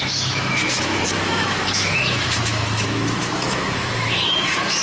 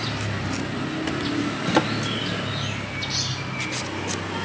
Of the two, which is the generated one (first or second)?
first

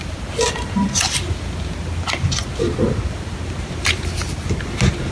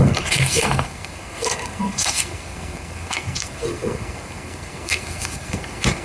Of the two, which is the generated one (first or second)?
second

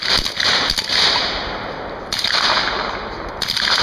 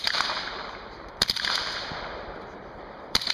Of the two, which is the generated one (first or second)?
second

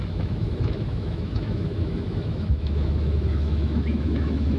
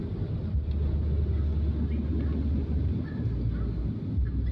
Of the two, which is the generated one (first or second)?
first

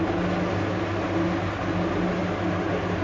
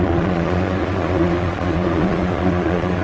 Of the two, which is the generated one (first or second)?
second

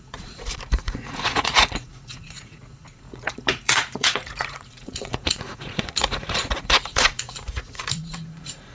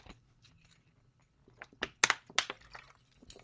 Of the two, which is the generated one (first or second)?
first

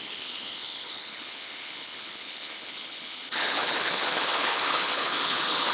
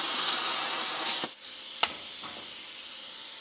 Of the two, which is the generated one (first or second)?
first